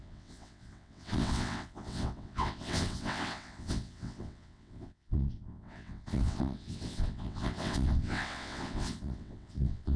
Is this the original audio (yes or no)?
no